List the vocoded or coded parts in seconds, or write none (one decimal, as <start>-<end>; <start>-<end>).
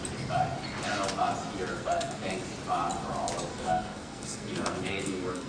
1.7-2.3; 3.5-5.5